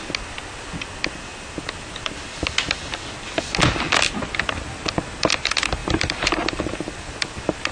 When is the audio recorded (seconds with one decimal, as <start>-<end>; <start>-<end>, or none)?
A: 0.0-1.3; 2.1-5.8; 7.0-7.7